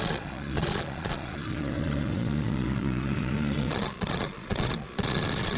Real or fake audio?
fake